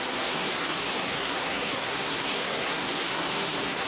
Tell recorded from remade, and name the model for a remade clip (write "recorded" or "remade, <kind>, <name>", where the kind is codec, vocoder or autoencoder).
remade, codec, SNAC